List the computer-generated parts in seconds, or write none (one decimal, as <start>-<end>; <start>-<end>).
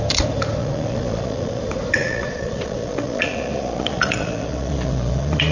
0.6-1.6; 2.0-5.5